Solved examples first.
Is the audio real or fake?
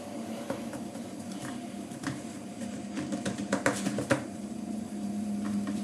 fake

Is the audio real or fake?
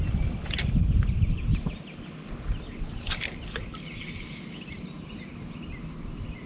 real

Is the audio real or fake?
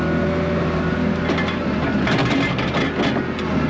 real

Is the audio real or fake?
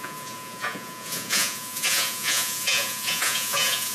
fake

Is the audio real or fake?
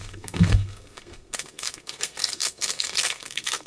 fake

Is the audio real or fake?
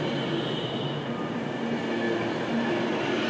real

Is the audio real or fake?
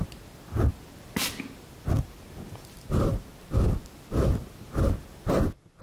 real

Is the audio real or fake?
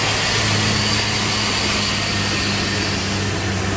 real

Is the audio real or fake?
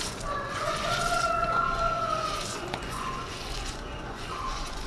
fake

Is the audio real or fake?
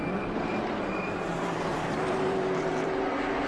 fake